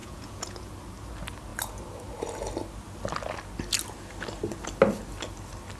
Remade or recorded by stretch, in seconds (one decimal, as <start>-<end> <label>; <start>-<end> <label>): 0.0-0.7 remade; 0.7-5.8 recorded